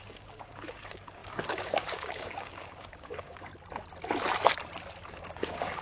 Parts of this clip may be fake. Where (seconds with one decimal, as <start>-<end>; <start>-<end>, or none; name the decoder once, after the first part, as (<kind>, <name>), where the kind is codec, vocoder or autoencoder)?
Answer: 0.0-3.5 (codec, DAC); 5.1-5.8